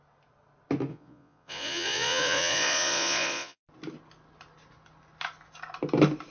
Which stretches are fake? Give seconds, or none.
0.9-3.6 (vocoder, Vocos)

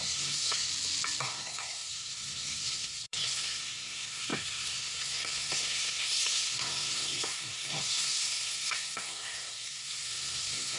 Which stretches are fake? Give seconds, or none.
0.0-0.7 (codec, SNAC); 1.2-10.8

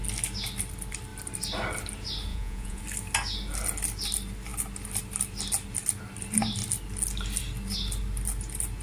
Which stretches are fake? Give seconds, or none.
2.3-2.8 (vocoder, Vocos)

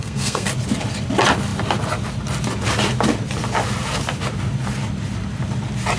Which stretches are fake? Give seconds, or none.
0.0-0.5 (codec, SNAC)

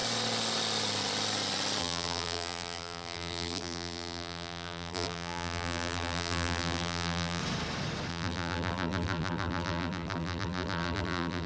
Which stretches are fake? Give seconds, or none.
1.8-7.4 (vocoder, BigVGAN v2); 8.1-11.5

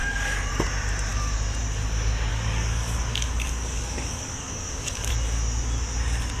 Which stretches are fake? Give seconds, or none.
0.0-0.5 (codec, DAC); 2.3-5.1